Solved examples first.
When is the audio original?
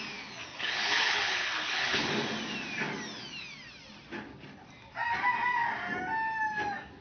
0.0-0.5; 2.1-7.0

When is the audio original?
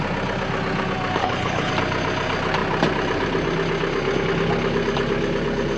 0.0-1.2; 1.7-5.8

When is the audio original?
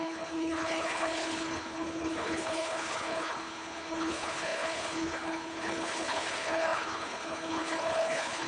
none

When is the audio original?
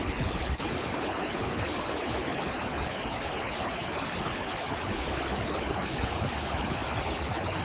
none